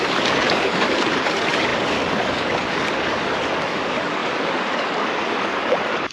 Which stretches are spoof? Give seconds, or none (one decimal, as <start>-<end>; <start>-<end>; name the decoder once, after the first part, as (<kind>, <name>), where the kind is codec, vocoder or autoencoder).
0.0-6.1 (codec, DAC)

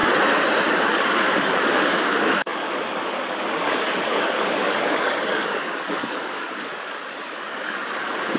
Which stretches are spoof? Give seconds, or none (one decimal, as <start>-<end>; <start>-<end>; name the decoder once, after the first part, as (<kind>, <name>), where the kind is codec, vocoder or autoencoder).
0.7-8.4 (codec, DAC)

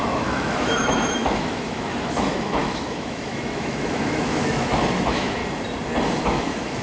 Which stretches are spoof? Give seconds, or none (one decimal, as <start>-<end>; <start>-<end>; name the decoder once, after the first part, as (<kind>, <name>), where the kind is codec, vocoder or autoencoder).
0.0-5.4 (autoencoder, DAC-VAE); 6.2-6.8

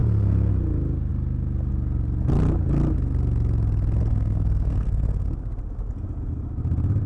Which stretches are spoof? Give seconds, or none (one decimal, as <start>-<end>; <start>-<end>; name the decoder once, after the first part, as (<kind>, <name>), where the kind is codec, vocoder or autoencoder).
0.0-0.5 (codec, SNAC); 4.1-5.3

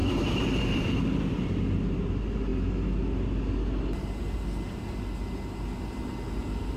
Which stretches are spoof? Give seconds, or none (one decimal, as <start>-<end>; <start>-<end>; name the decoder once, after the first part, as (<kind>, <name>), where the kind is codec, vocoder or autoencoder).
0.0-1.0 (vocoder, BigVGAN v2)

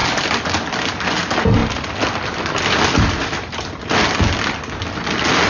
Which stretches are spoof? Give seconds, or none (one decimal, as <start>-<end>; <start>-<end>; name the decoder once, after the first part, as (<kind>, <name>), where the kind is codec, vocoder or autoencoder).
none

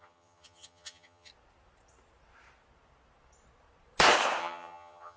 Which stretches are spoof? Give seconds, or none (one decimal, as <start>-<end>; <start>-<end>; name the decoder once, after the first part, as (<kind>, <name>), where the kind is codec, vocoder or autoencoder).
0.0-1.3 (vocoder, HiFi-GAN); 4.4-5.2

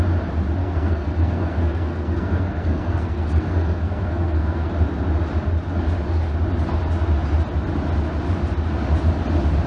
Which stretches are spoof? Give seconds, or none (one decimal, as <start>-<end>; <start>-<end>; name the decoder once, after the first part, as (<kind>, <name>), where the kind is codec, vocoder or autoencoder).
0.6-4.7 (codec, SNAC)